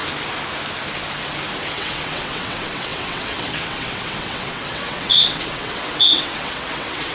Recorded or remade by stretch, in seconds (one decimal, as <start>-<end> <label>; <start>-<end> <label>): 0.0-1.7 recorded; 1.7-7.1 remade